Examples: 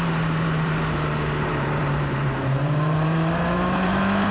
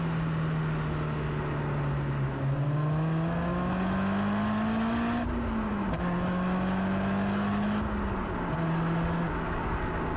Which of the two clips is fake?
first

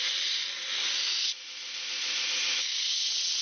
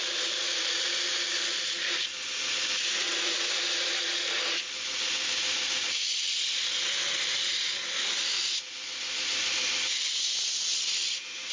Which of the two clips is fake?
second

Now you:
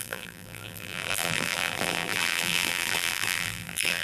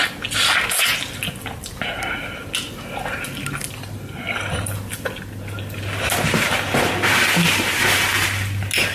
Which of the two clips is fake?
first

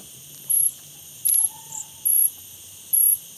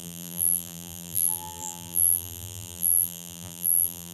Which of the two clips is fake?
second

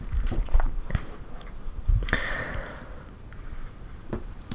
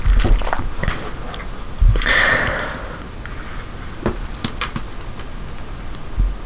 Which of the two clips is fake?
first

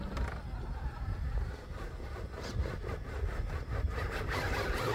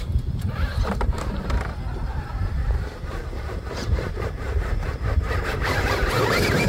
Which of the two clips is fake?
second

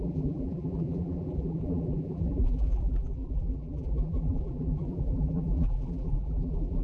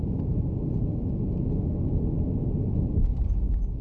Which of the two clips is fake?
first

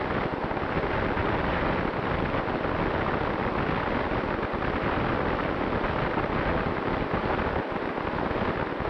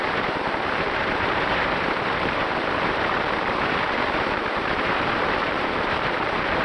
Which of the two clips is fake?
second